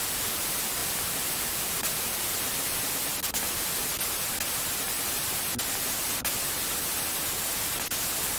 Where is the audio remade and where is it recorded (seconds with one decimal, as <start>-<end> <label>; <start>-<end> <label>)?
0.0-3.1 remade; 3.1-8.4 recorded